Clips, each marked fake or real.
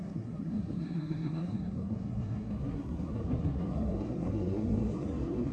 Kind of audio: fake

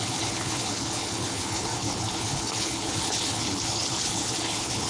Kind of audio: fake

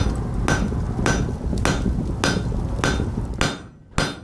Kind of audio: real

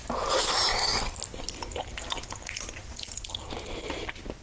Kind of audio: real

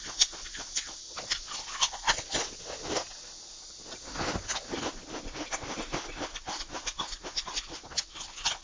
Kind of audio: real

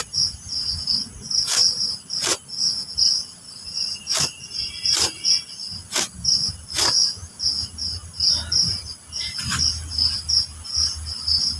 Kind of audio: real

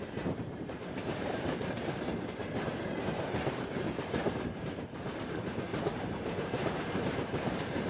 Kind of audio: fake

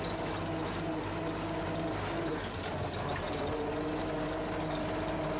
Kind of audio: real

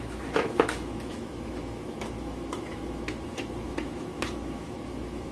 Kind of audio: fake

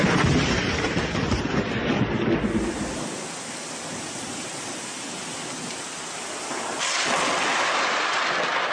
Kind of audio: real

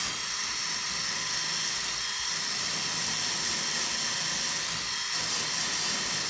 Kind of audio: real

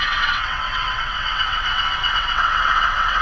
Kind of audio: fake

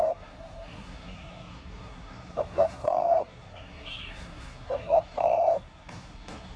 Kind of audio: fake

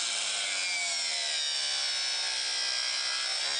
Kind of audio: real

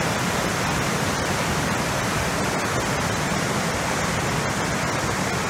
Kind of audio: real